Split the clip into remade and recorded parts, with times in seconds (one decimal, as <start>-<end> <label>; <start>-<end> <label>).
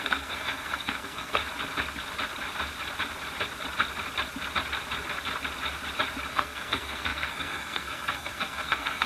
0.0-1.4 remade; 1.4-6.3 recorded; 6.3-9.1 remade